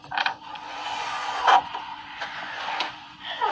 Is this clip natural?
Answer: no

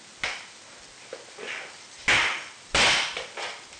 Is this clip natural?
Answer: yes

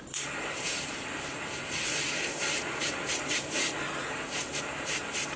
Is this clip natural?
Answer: no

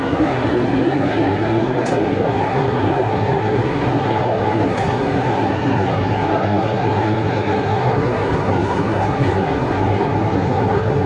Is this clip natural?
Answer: no